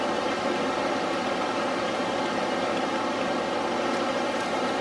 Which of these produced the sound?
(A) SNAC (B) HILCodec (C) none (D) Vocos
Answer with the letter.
C